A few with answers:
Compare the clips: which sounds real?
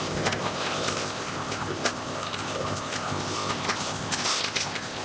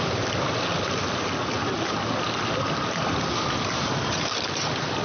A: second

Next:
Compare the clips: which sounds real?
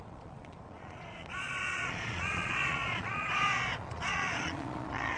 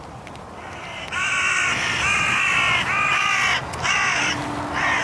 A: second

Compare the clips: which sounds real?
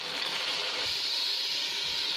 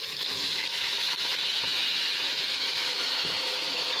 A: first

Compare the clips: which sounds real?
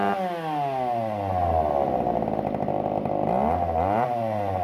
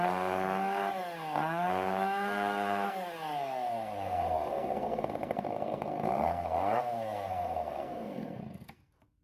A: first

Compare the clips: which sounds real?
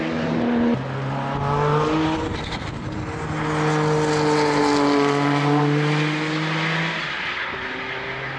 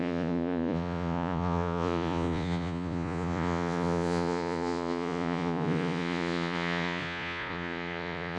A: first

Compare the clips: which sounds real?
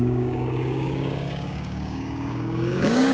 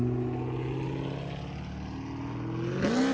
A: second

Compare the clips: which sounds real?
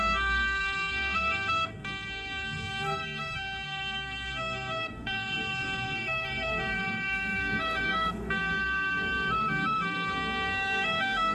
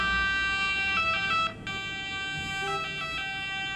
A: second